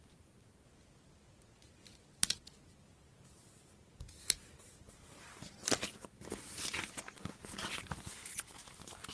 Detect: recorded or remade recorded